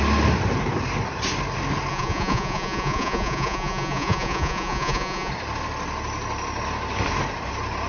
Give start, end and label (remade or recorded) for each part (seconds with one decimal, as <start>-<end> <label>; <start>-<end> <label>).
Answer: 0.0-1.9 recorded; 1.9-5.3 remade; 5.3-7.9 recorded